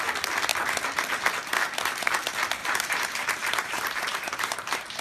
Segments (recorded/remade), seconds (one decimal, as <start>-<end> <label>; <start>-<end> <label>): 0.0-2.6 recorded; 2.6-5.0 remade